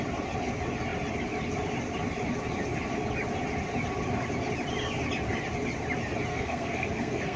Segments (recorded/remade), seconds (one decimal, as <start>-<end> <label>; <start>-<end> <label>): 0.0-6.3 recorded; 6.3-7.4 remade